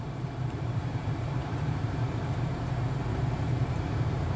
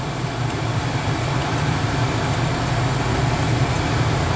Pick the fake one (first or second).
first